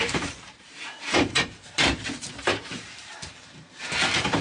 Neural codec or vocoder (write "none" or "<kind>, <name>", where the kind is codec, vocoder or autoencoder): vocoder, BigVGAN v2